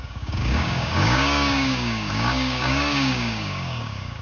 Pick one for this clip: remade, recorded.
remade